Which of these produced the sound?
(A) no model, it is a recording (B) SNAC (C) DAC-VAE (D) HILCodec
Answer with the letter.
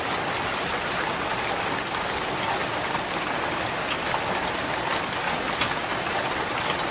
A